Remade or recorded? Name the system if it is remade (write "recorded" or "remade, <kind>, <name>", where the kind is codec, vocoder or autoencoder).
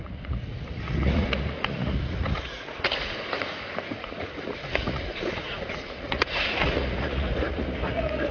remade, vocoder, Vocos